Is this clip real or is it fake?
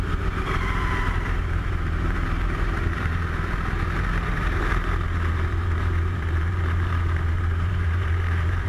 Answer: fake